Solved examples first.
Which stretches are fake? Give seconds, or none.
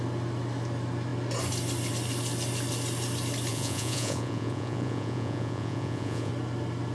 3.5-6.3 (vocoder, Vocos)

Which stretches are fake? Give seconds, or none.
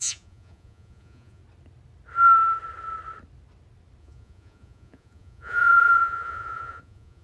0.0-1.4 (vocoder, Vocos); 4.0-7.2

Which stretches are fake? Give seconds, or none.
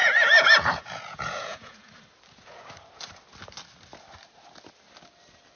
0.0-1.9 (vocoder, Vocos)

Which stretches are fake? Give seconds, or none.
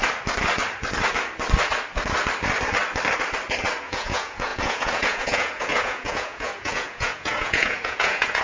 3.8-8.4 (vocoder, Vocos)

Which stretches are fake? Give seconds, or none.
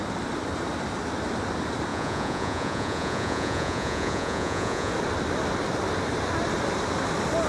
1.9-4.9 (vocoder, Vocos)